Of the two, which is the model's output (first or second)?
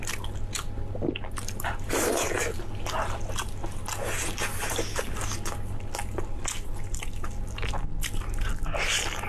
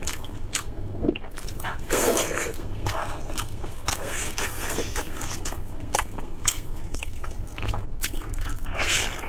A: second